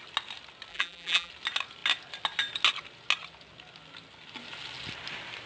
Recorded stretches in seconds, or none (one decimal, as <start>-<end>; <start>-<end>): 0.0-0.7; 1.3-5.5